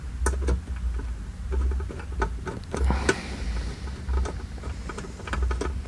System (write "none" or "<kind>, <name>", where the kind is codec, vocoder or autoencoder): none